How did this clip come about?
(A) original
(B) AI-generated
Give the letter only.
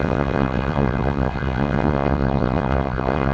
B